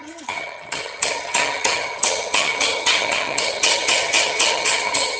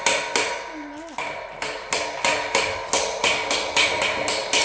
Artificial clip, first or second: first